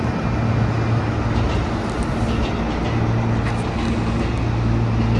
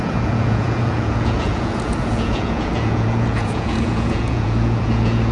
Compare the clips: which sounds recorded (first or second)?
first